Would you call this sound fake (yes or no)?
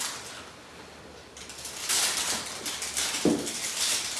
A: no